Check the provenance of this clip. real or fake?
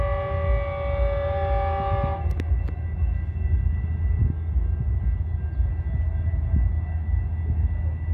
real